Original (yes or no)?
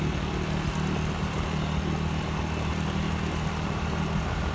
yes